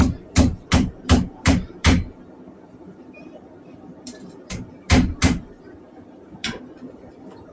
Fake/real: fake